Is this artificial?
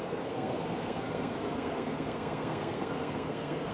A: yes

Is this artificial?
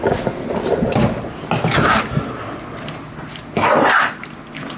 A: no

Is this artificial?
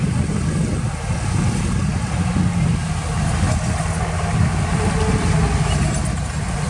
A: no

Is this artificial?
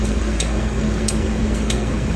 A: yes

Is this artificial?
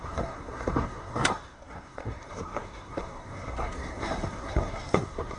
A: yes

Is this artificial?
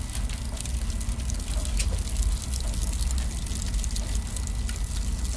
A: no